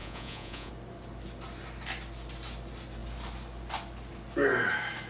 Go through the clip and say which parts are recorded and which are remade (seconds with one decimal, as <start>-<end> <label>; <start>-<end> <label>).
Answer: 0.0-0.7 remade; 0.7-5.1 recorded